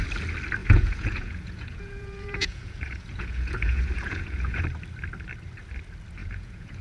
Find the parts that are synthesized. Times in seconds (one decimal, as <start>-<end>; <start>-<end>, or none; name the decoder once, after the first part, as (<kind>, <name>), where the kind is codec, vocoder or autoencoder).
0.6-4.6 (vocoder, Vocos); 6.2-6.8